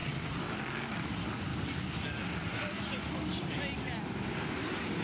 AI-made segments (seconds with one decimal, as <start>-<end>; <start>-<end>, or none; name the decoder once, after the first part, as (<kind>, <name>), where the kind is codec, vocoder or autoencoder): none